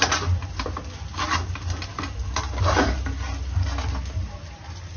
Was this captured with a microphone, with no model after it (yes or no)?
yes